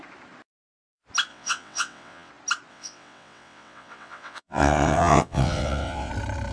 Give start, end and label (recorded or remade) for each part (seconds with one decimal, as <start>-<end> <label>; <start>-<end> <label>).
0.0-1.3 recorded; 1.3-2.3 remade; 2.3-2.7 recorded; 2.7-6.1 remade; 6.1-6.5 recorded